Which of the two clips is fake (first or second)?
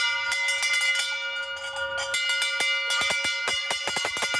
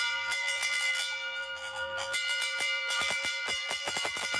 second